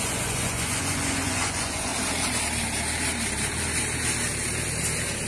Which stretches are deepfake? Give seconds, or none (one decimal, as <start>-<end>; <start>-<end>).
0.0-1.9